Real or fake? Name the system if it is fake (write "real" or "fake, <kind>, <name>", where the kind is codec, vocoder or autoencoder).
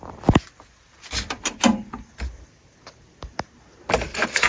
real